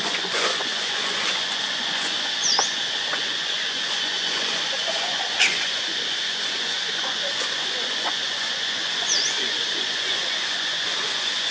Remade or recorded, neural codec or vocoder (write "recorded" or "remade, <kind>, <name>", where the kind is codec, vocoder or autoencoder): remade, vocoder, Vocos